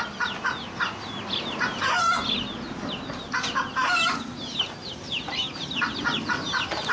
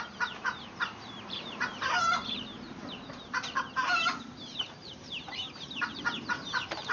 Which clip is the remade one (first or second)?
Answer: second